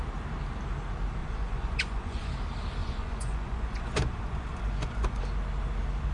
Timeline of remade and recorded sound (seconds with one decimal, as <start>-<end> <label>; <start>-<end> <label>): 0.0-1.2 recorded; 1.2-2.3 remade; 2.3-2.8 recorded; 2.8-5.2 remade; 5.2-6.1 recorded